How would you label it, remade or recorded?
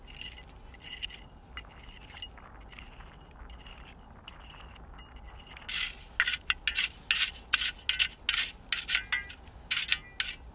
recorded